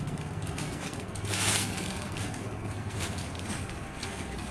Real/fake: fake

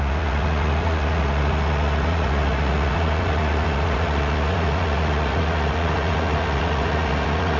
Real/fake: fake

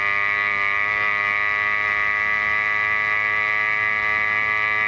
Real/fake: real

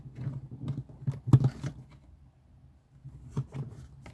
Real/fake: real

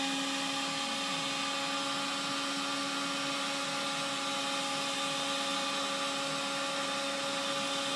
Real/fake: real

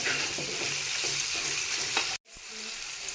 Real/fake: real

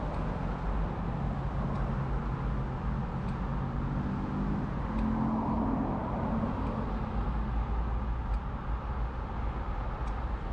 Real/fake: real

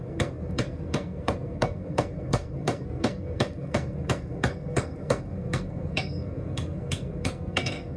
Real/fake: fake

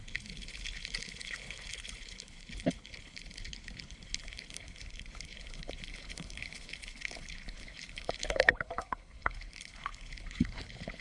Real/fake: fake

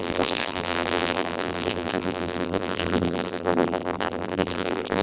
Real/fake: fake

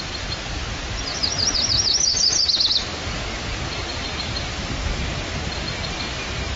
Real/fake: real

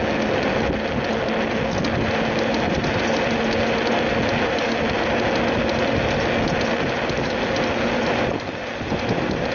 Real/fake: real